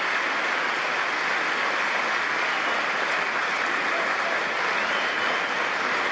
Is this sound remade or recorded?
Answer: recorded